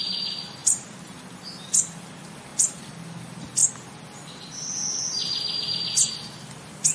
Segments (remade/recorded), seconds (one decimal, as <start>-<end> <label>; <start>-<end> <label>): 0.0-6.9 recorded